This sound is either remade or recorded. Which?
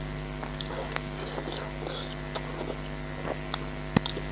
recorded